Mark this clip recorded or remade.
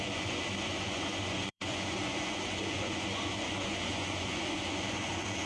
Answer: remade